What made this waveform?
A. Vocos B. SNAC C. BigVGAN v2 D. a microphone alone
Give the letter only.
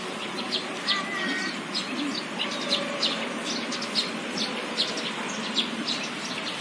D